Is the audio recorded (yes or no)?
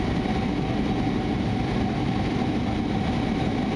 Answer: yes